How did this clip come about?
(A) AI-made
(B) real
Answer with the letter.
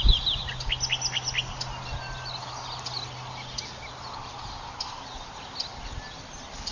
B